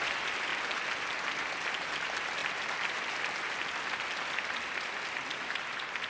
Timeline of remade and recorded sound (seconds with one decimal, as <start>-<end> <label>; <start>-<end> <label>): 0.0-0.5 remade; 0.5-1.0 recorded; 1.0-2.4 remade; 2.4-3.4 recorded; 3.4-6.1 remade